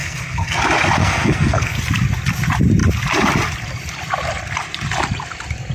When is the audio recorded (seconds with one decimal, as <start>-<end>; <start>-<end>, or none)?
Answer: 0.6-1.0; 1.8-5.7